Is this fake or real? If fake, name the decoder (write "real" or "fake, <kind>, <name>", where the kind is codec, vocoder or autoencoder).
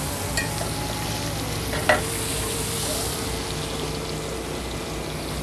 real